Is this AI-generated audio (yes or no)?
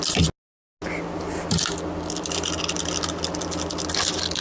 no